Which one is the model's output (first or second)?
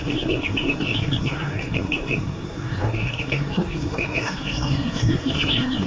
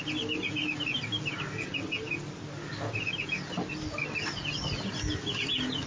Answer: first